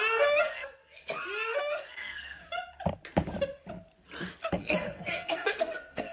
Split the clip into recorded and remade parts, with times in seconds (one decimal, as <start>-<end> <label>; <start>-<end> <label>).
0.0-0.8 remade; 0.8-1.6 recorded; 1.6-2.4 remade; 2.4-4.5 recorded; 4.5-6.1 remade